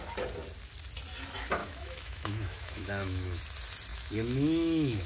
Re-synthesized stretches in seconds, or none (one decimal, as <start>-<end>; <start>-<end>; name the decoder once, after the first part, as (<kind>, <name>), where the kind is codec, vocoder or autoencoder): 1.6-3.4 (autoencoder, DAC-VAE); 3.9-5.1